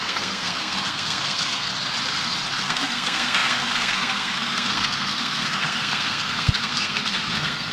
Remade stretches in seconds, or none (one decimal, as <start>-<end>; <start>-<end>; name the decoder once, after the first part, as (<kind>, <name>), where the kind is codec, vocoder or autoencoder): 0.0-1.7 (codec, SNAC); 2.6-7.7